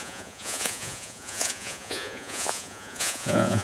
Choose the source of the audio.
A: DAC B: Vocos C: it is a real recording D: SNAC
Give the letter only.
B